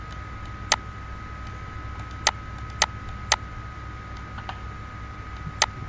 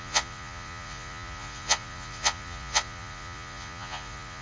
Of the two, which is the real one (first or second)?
first